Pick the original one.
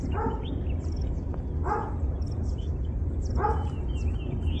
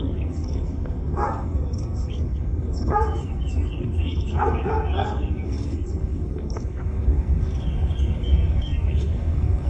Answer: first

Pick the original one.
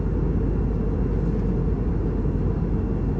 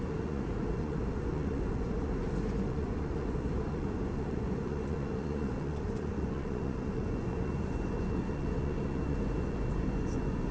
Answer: first